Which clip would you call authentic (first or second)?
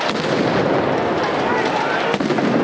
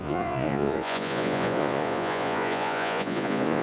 first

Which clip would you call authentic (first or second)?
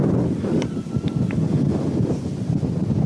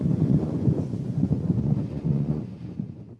first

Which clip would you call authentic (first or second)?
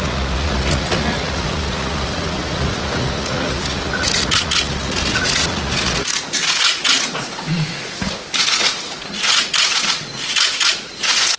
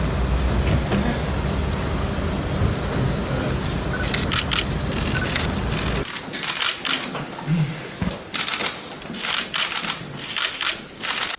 second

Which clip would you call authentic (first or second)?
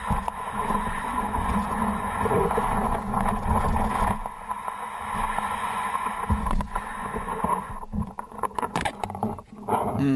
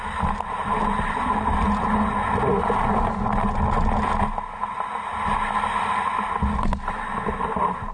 second